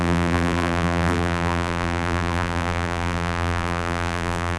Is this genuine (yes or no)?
no